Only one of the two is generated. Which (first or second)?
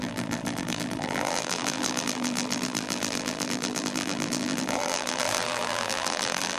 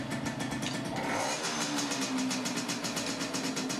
first